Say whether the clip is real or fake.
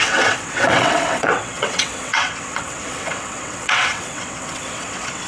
fake